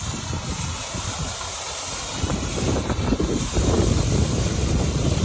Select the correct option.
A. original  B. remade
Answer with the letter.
B